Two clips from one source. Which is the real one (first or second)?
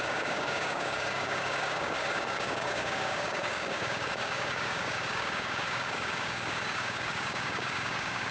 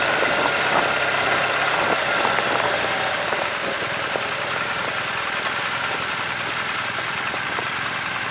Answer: second